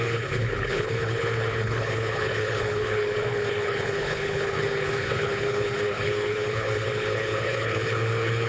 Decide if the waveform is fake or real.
fake